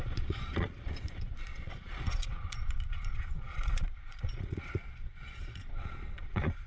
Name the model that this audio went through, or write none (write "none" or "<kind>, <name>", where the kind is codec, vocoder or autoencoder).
vocoder, Vocos